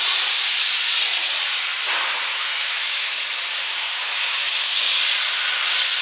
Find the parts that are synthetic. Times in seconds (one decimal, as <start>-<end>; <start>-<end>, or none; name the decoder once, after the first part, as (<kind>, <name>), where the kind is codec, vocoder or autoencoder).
2.3-3.1 (autoencoder, DAC-VAE); 3.6-4.8